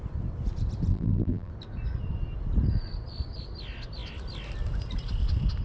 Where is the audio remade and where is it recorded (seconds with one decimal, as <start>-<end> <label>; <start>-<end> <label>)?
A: 0.0-0.9 recorded; 0.9-1.5 remade; 1.5-5.6 recorded